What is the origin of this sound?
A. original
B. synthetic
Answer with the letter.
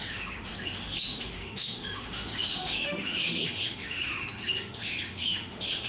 B